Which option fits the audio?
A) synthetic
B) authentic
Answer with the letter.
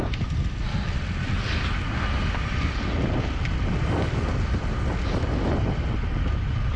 B